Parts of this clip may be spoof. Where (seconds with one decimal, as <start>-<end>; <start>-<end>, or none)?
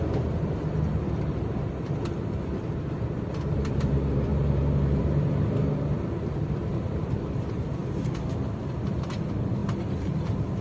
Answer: 0.0-4.3; 5.0-7.8; 8.6-10.6